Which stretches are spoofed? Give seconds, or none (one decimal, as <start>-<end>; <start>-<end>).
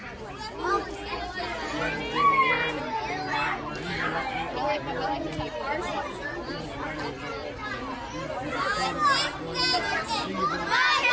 none